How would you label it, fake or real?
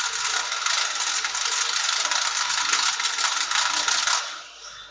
real